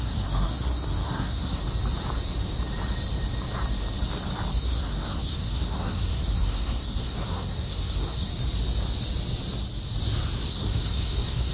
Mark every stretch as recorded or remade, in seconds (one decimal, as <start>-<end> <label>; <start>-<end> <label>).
0.0-1.6 remade; 1.6-4.6 recorded; 4.6-8.3 remade; 8.3-10.5 recorded; 10.5-11.5 remade